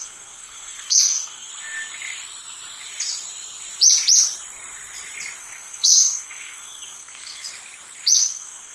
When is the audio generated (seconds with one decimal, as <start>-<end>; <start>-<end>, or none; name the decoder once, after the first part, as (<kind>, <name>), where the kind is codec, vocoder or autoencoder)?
0.0-1.5 (codec, SNAC); 5.4-7.5; 8.2-8.7